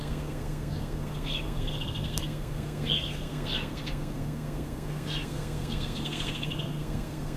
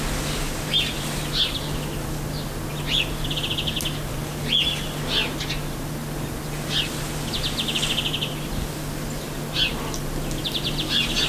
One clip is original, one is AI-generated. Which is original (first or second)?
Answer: second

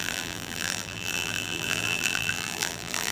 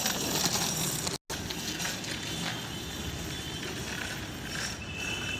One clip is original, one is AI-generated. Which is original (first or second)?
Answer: second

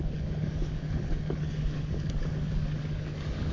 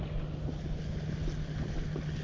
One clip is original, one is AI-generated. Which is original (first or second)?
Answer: second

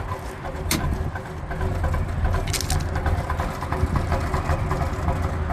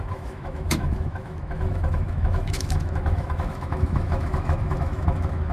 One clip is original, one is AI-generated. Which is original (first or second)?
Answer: first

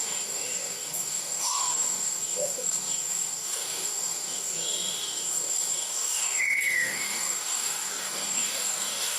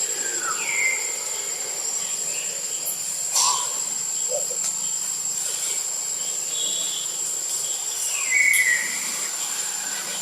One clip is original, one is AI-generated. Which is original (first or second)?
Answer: second